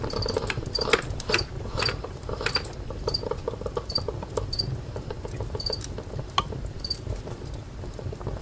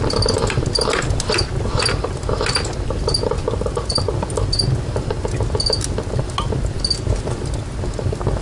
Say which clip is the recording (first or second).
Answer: second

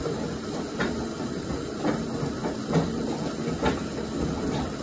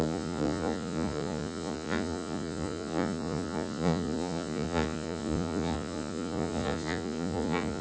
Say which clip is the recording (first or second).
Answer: first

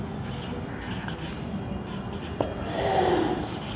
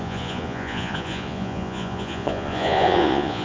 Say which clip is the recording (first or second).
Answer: first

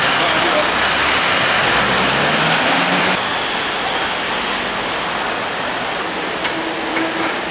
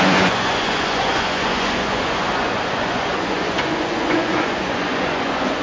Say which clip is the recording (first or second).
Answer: first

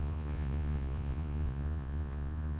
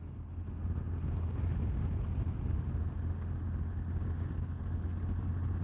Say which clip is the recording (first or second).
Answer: second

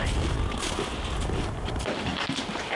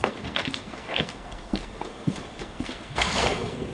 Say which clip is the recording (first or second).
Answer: first